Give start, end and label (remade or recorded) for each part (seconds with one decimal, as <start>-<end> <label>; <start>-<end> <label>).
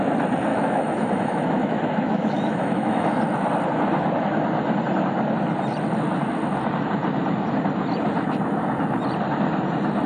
0.0-0.5 recorded; 0.5-3.2 remade; 3.2-10.1 recorded